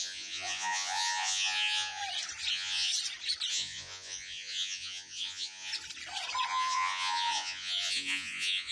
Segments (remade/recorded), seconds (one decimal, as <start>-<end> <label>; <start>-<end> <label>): 0.0-2.0 remade; 2.0-2.5 recorded; 2.5-2.9 remade; 2.9-3.5 recorded; 3.5-5.7 remade; 5.7-6.5 recorded; 6.5-8.7 remade